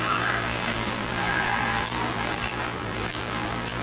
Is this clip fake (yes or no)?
yes